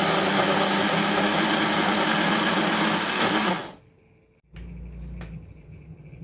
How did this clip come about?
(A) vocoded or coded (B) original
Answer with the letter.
B